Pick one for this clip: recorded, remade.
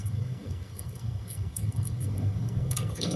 remade